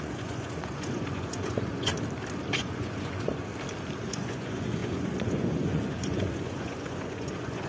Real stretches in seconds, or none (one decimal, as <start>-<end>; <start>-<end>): 1.9-2.5; 3.5-4.1